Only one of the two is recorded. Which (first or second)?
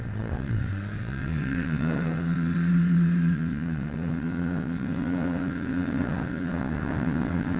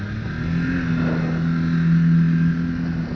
second